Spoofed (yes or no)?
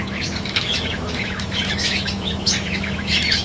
yes